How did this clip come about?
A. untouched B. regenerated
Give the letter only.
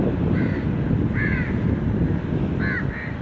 A